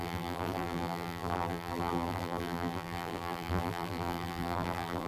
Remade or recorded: remade